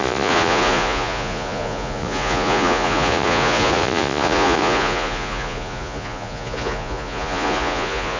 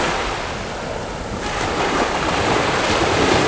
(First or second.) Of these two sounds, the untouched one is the second